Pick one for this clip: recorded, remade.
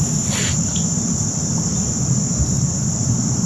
remade